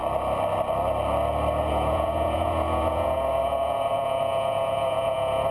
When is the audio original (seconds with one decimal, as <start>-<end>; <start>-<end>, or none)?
0.0-1.7